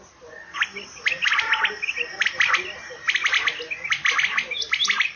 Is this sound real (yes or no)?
yes